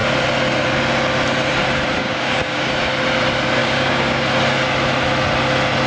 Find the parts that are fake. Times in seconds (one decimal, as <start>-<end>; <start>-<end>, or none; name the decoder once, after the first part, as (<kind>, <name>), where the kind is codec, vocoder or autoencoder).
2.0-2.7 (codec, DAC); 3.6-4.2